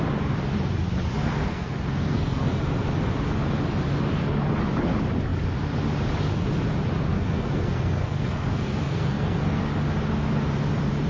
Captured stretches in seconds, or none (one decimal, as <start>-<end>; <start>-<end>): 0.0-1.4; 2.5-7.1; 9.6-11.1